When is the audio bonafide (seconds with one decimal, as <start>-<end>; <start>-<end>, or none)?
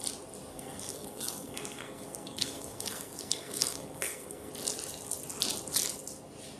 0.0-0.5; 4.5-6.6